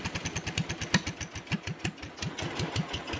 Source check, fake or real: real